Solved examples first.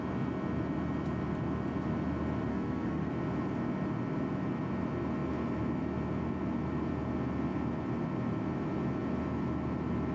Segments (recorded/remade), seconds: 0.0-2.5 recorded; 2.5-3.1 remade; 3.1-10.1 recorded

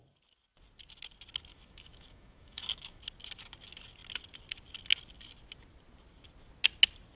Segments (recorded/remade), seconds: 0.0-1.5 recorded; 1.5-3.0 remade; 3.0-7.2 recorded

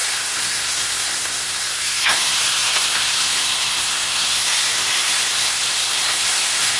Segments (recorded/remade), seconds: 0.0-6.8 remade

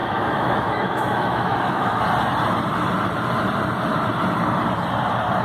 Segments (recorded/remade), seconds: 0.0-2.0 remade; 2.0-5.4 recorded

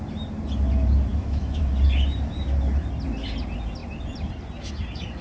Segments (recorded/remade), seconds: 0.0-1.1 recorded; 1.1-1.6 remade; 1.6-5.2 recorded